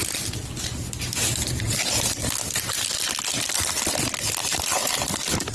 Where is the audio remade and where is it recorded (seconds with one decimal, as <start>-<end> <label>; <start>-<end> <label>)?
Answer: 0.0-5.5 recorded